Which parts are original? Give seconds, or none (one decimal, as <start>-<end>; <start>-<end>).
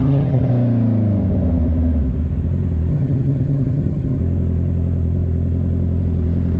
0.5-2.9; 4.2-6.6